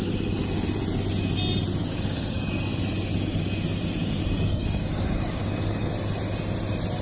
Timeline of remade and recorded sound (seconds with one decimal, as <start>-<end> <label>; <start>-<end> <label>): 0.0-1.8 recorded; 1.8-2.5 remade; 2.5-4.0 recorded; 4.0-5.9 remade; 5.9-7.0 recorded